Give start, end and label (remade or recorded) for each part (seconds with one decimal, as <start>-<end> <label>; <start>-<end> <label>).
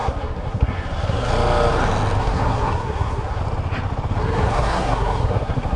0.0-1.3 remade; 1.3-2.2 recorded; 2.2-3.4 remade; 3.4-4.2 recorded; 4.2-5.8 remade